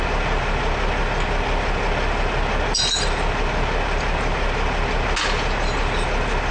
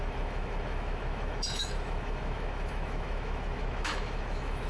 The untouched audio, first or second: first